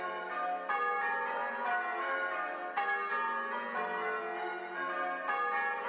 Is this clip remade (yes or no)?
no